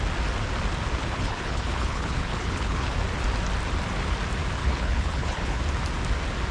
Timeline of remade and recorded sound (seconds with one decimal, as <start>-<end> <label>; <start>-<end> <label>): 0.0-1.0 recorded; 1.0-3.0 remade; 3.0-4.6 recorded; 4.6-5.6 remade; 5.6-6.5 recorded